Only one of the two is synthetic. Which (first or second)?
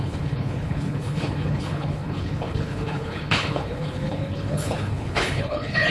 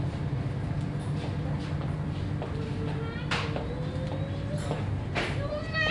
first